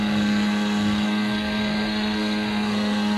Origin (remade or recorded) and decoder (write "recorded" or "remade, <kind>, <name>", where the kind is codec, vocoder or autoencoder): remade, codec, SNAC